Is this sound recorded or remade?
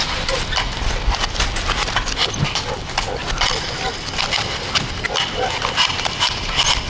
recorded